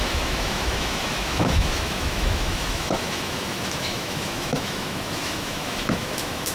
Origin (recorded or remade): remade